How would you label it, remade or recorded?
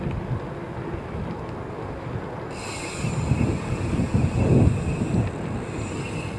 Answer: recorded